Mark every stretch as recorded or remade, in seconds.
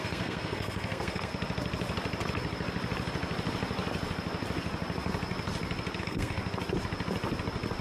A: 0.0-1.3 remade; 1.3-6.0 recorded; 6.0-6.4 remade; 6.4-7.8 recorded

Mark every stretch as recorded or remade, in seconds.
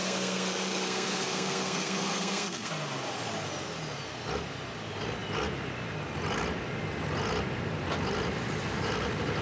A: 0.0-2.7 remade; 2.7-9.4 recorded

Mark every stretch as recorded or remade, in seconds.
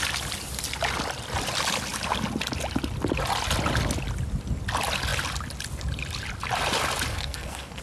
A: 0.0-7.1 recorded; 7.1-7.8 remade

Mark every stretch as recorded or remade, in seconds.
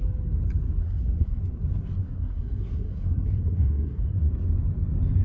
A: 0.0-0.8 recorded; 0.8-1.4 remade; 1.4-2.0 recorded; 2.0-4.3 remade; 4.3-5.2 recorded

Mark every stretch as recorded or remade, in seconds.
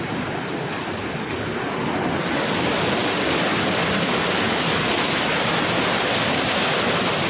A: 0.0-7.3 recorded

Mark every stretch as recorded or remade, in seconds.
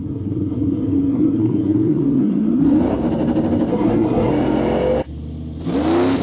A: 0.0-2.6 remade; 2.6-3.7 recorded; 3.7-4.3 remade; 4.3-6.2 recorded